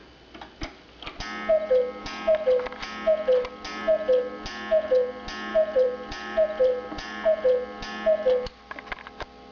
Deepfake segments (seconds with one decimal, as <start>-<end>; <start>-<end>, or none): 5.5-7.4